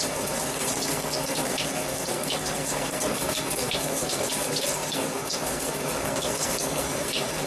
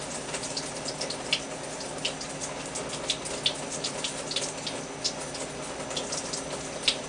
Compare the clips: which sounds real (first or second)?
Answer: second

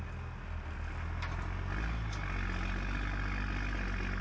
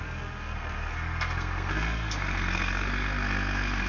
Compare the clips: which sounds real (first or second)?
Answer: first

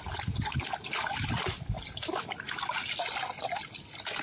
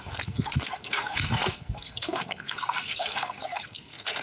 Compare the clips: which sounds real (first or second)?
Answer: first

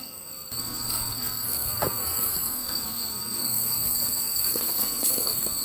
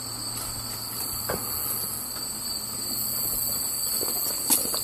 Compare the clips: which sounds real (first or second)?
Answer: second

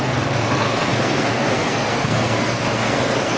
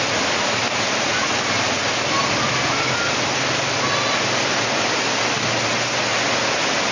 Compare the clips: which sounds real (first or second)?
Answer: second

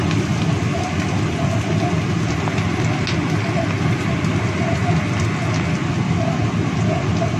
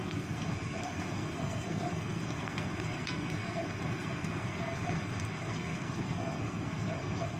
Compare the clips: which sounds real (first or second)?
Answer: first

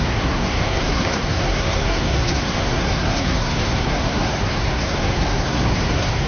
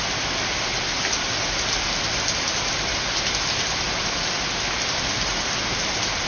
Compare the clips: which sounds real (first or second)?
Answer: second